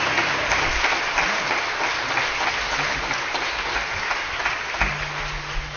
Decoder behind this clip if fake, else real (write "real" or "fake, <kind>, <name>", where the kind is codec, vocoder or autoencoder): real